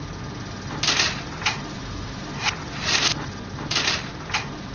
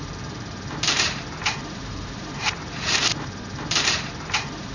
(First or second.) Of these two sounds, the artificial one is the second